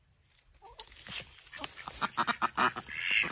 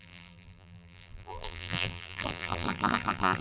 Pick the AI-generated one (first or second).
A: second